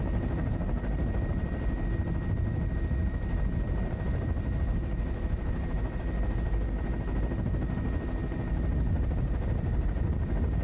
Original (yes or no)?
yes